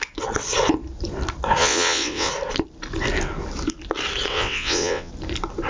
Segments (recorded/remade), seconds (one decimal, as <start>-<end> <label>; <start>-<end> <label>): 0.0-1.6 recorded; 1.6-2.3 remade; 2.3-4.3 recorded; 4.3-5.1 remade; 5.1-5.7 recorded